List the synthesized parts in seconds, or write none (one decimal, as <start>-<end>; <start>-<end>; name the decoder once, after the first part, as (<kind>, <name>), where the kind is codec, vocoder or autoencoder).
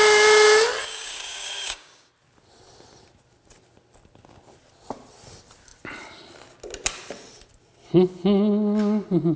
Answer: 0.8-2.1 (codec, DAC)